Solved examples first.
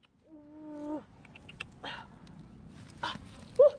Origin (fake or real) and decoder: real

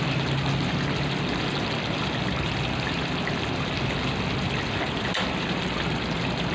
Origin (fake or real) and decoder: real